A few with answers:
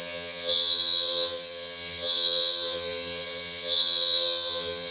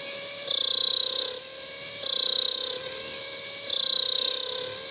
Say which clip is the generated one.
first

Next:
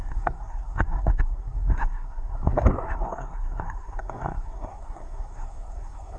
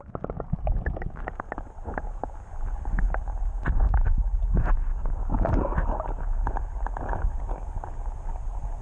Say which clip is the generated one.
first